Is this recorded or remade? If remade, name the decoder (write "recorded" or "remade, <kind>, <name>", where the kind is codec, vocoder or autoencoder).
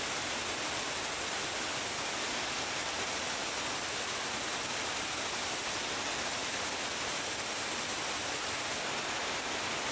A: recorded